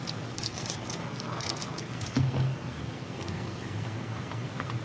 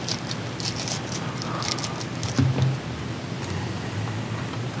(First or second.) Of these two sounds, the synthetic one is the first